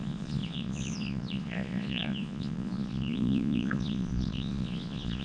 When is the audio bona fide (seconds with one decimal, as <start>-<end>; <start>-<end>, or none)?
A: none